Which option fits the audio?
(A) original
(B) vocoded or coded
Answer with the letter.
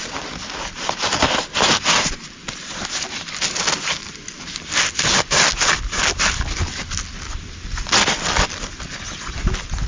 A